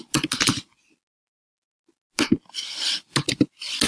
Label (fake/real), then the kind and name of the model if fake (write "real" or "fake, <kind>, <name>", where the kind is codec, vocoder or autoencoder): real